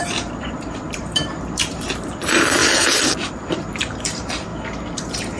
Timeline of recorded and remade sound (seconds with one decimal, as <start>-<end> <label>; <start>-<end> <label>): 0.0-2.6 remade; 2.6-3.3 recorded; 3.3-4.5 remade; 4.5-5.0 recorded; 5.0-5.4 remade